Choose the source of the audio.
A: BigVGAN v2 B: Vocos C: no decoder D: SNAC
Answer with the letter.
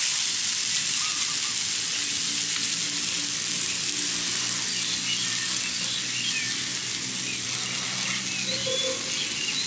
C